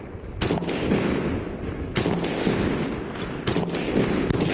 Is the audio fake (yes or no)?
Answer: no